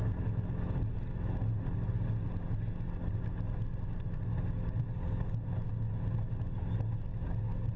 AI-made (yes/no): no